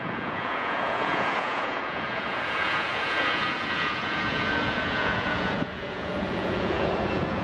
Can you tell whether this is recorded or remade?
remade